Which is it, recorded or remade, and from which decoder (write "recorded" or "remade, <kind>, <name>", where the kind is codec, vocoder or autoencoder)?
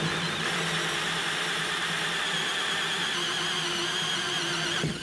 recorded